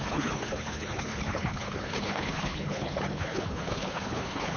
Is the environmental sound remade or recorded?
remade